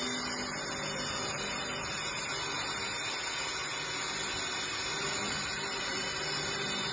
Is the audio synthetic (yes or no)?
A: no